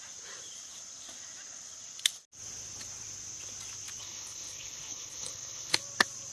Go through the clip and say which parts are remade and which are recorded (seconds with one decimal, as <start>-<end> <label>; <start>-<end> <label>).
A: 0.0-4.0 recorded; 4.0-5.8 remade; 5.8-6.3 recorded